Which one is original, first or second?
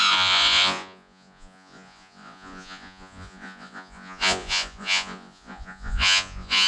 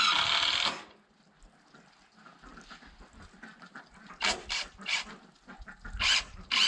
second